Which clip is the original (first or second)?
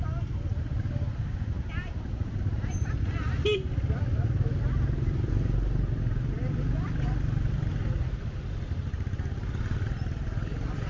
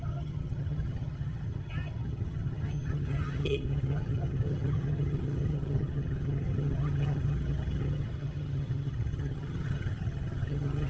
first